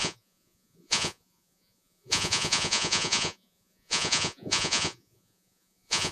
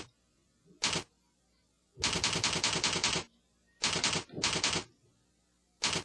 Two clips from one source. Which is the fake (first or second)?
first